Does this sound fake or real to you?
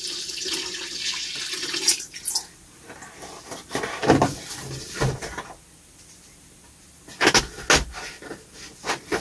real